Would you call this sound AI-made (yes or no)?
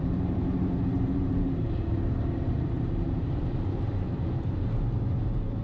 yes